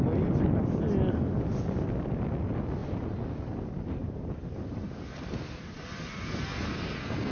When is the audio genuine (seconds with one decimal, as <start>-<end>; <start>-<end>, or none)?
0.0-4.0; 4.9-7.3